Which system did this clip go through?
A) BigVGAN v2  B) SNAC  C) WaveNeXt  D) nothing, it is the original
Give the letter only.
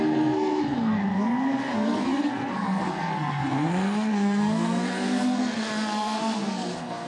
B